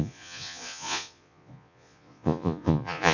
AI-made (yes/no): yes